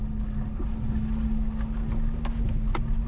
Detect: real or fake real